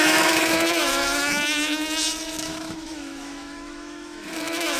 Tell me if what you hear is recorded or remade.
remade